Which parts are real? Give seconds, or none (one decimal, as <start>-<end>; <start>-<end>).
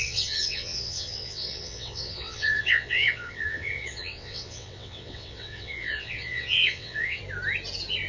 7.2-8.1